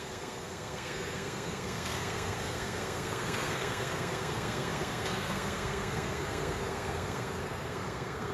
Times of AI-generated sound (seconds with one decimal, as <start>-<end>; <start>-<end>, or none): 0.0-8.3